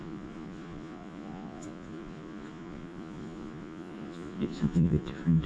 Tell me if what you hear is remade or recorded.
remade